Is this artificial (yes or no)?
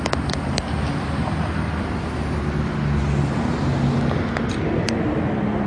no